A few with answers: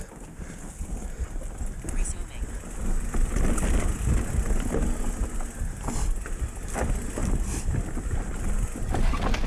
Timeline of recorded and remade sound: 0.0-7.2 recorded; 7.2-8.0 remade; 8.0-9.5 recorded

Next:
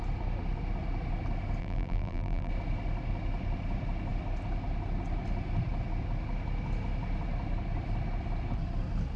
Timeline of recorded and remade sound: 0.0-1.6 recorded; 1.6-2.5 remade; 2.5-9.2 recorded

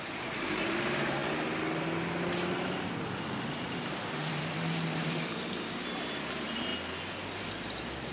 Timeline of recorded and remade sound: 0.0-1.2 remade; 1.2-3.9 recorded; 3.9-6.7 remade; 6.7-7.5 recorded; 7.5-8.1 remade

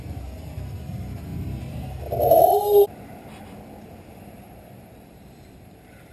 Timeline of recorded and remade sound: 0.0-1.3 remade; 1.3-4.1 recorded; 4.1-6.1 remade